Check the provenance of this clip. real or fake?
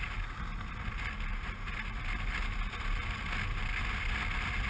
real